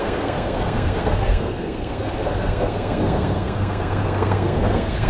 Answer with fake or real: fake